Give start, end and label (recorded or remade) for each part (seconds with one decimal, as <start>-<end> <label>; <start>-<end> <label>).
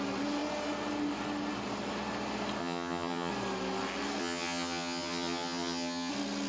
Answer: 0.0-2.6 recorded; 2.6-3.3 remade; 3.3-4.2 recorded; 4.2-6.1 remade; 6.1-6.5 recorded